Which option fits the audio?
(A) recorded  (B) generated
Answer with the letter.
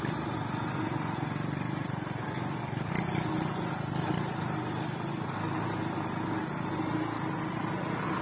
A